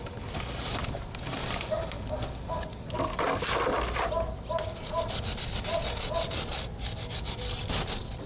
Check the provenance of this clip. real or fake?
real